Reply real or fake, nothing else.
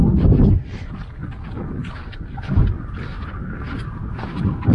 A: real